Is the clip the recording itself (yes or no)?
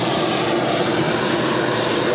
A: yes